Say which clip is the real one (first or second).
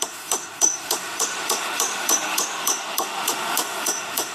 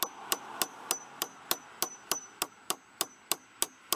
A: second